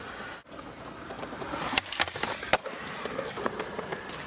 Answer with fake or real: real